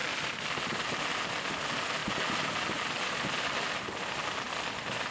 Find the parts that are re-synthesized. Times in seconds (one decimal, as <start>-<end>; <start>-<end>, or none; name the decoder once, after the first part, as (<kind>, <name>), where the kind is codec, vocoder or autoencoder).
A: none